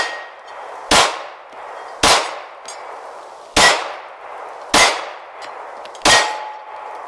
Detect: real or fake real